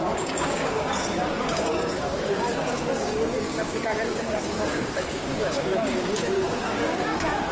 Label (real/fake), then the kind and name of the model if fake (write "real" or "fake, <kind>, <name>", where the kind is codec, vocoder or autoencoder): fake, codec, DAC